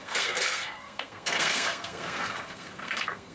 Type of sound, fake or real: fake